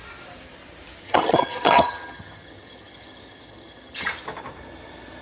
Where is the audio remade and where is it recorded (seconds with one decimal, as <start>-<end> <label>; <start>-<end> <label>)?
0.0-1.0 recorded; 1.0-4.1 remade; 4.1-5.2 recorded